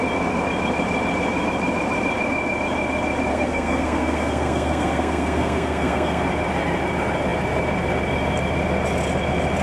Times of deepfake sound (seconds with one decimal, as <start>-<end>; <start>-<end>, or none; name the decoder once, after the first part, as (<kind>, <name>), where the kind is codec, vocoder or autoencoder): 3.3-6.2 (codec, SNAC)